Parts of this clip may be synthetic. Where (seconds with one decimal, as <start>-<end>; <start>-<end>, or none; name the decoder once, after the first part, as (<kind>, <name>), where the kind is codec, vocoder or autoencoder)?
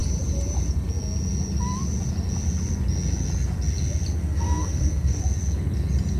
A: 4.2-5.2 (codec, SNAC)